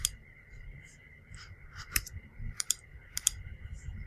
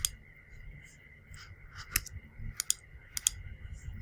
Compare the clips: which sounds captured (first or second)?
second